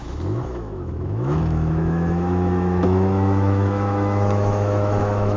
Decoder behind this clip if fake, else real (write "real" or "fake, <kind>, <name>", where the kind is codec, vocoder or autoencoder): fake, autoencoder, DAC-VAE